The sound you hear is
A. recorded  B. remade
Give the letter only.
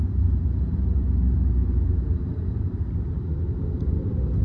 A